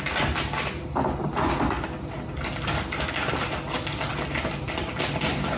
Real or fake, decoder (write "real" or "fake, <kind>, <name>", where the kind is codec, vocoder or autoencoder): real